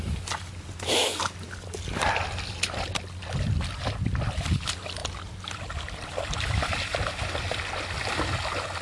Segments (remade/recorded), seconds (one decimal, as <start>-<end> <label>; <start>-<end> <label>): 0.0-8.8 recorded